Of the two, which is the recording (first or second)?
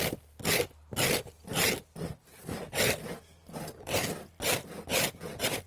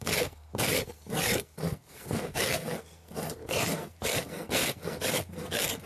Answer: first